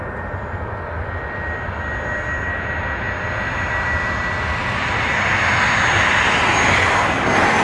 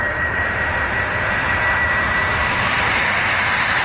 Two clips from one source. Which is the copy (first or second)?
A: second